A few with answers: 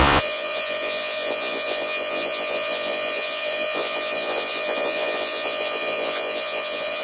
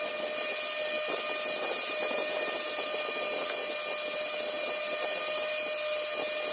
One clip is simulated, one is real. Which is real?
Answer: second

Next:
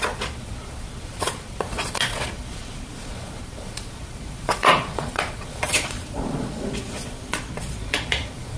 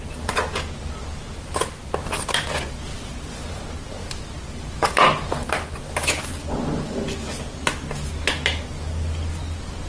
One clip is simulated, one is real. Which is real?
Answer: second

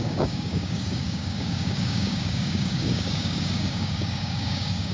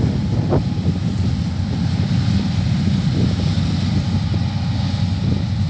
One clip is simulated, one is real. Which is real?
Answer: second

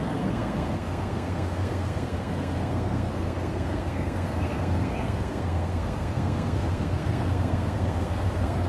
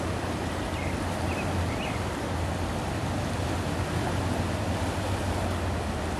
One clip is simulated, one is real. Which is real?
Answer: second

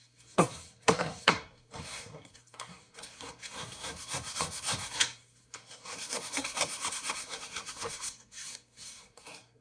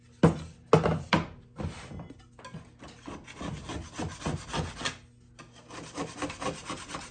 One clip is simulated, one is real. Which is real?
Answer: second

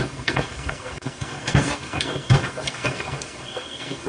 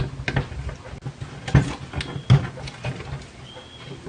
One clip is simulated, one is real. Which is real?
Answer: second